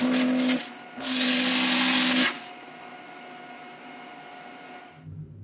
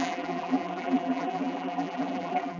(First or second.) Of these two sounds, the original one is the first